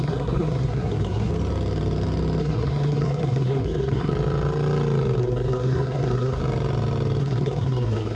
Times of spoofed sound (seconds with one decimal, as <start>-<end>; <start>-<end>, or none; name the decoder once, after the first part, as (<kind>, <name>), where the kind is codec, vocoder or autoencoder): 0.0-1.3 (codec, SNAC); 2.4-4.1; 5.2-6.4; 7.2-8.2